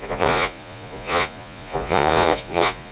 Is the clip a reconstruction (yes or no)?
yes